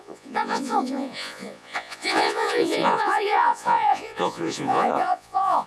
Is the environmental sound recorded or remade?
remade